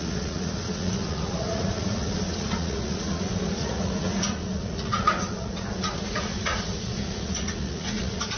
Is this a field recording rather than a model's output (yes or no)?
no